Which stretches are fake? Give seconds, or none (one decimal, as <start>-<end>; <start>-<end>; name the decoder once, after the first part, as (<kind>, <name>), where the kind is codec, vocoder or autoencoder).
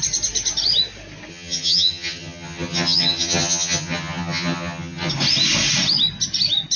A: 1.3-5.1 (vocoder, HiFi-GAN)